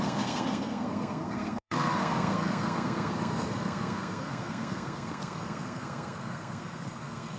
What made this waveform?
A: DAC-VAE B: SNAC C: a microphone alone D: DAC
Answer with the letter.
B